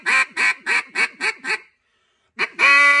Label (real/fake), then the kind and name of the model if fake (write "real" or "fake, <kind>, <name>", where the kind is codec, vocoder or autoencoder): real